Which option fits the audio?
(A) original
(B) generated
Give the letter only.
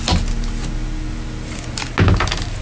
A